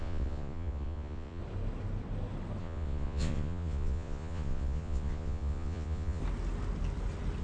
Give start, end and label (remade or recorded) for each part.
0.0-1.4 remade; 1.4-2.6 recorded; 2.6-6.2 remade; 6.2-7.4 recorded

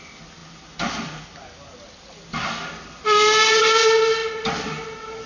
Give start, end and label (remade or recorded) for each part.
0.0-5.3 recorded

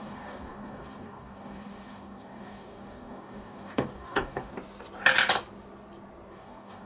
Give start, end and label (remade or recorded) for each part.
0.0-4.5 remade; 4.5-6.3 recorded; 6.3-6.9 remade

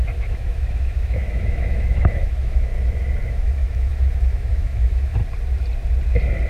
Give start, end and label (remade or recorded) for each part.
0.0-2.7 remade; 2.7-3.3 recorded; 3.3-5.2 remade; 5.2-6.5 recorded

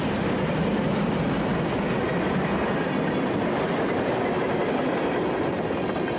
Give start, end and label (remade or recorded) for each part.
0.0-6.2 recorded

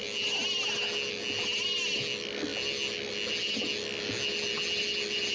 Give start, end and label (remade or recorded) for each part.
0.0-5.3 recorded